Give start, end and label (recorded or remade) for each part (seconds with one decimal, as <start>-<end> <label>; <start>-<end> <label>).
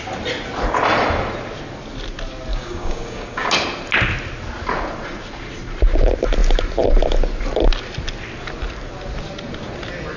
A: 0.0-2.5 recorded; 2.5-3.5 remade; 3.5-10.2 recorded